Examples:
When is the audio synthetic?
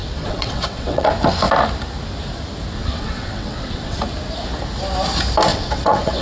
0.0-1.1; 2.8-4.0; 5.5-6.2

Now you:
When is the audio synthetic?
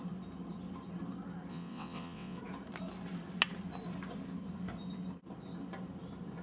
1.5-2.4